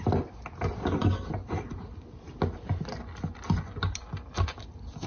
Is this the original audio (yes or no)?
yes